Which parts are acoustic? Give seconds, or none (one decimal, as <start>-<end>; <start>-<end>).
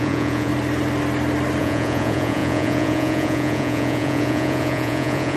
0.5-1.6